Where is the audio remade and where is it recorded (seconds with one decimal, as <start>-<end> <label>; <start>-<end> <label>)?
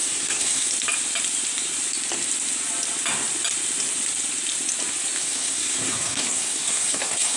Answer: 0.0-0.7 remade; 0.7-5.2 recorded; 5.2-7.4 remade